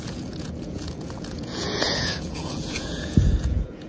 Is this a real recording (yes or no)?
no